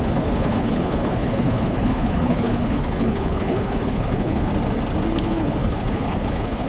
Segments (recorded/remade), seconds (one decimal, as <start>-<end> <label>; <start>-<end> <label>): 0.0-4.5 remade; 4.5-5.1 recorded; 5.1-6.7 remade